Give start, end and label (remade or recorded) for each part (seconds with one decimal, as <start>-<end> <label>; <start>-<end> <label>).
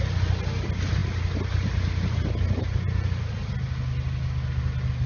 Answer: 0.0-5.1 recorded